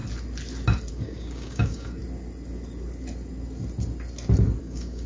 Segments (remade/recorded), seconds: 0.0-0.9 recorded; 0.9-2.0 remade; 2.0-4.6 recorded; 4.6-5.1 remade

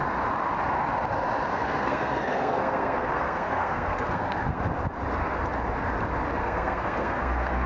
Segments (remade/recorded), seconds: 0.0-1.5 recorded; 1.5-4.6 remade; 4.6-6.4 recorded; 6.4-7.7 remade